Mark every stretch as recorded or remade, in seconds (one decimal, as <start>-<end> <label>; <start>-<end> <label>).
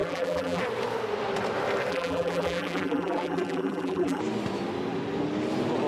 0.0-0.6 remade; 0.6-1.9 recorded; 1.9-4.2 remade; 4.2-5.9 recorded